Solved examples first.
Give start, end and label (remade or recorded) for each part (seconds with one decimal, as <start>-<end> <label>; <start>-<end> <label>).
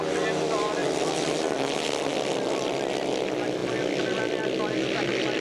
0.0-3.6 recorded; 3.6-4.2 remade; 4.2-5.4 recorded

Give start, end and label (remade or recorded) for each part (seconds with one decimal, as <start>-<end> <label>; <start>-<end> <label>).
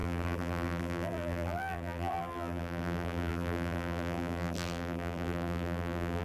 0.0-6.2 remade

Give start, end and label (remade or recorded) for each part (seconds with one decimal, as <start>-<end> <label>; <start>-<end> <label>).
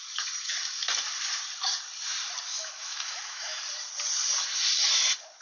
0.0-2.5 recorded; 2.5-3.6 remade; 3.6-5.4 recorded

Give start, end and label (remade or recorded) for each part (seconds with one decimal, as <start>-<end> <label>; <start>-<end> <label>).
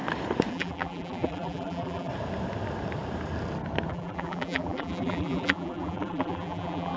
0.0-0.5 recorded; 0.5-2.1 remade; 2.1-3.9 recorded; 3.9-7.0 remade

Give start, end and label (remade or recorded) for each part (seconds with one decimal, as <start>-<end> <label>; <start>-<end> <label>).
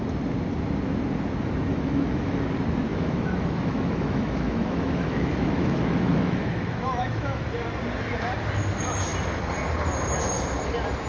0.0-1.7 recorded; 1.7-2.4 remade; 2.4-2.9 recorded; 2.9-7.4 remade; 7.4-11.1 recorded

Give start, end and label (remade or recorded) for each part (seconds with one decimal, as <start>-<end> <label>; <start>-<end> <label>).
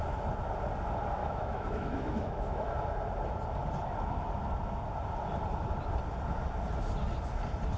0.0-1.2 recorded; 1.2-2.7 remade; 2.7-7.8 recorded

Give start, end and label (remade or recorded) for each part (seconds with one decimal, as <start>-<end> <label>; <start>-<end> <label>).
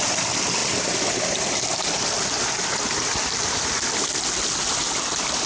0.0-0.6 recorded; 0.6-3.9 remade; 3.9-5.5 recorded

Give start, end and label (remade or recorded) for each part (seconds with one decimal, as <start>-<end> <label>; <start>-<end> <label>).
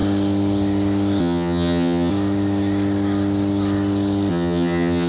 0.0-1.2 recorded; 1.2-2.1 remade; 2.1-4.3 recorded; 4.3-5.1 remade